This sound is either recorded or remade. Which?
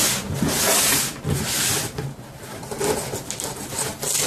recorded